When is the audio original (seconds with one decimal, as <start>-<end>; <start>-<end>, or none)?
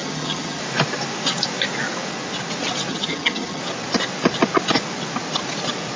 0.6-2.9; 3.6-6.0